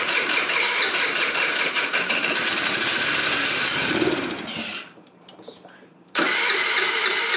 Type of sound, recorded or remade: remade